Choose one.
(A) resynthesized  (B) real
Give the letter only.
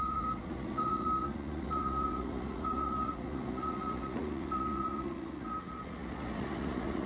A